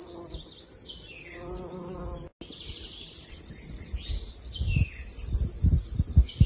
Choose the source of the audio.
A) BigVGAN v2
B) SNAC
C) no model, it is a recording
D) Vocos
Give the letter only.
C